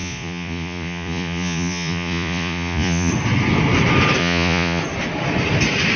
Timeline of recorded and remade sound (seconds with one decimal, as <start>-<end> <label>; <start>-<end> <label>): 0.0-3.1 remade; 3.1-4.2 recorded; 4.2-4.8 remade; 4.8-6.0 recorded